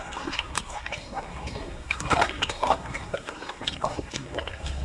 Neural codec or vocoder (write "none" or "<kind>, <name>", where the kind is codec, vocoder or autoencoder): codec, SNAC